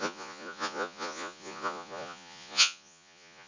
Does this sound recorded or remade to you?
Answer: remade